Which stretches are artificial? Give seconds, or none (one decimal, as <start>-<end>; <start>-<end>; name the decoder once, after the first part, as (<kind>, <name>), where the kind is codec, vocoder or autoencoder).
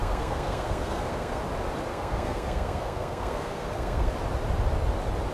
0.0-1.4 (codec, SNAC); 1.9-4.1